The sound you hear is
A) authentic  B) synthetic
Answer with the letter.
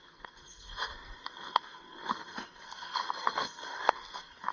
B